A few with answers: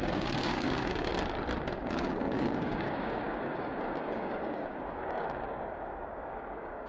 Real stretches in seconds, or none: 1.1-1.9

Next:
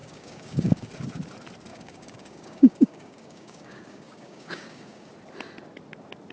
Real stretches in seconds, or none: 0.9-1.7; 5.1-6.3

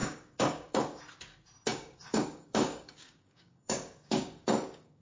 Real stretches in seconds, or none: 1.0-1.7

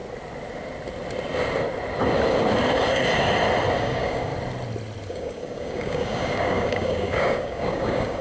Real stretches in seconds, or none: 0.0-3.8; 4.3-5.1

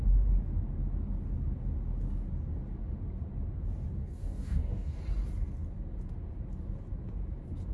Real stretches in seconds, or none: 0.0-4.0; 5.0-7.7

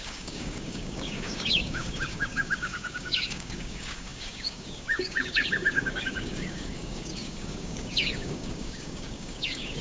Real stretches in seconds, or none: none

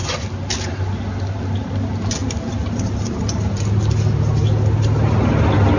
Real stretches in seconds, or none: 0.0-5.8